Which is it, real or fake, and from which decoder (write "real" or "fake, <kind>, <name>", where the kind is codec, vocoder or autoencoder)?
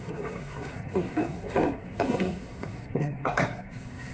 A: fake, codec, SNAC